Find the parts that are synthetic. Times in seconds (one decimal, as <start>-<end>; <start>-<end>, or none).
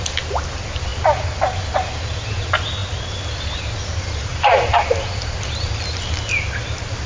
4.3-5.8